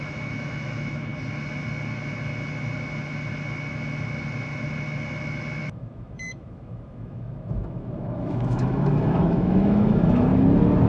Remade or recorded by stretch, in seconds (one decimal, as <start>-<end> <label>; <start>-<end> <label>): 0.0-1.1 remade; 1.1-5.6 recorded; 5.6-10.3 remade; 10.3-10.9 recorded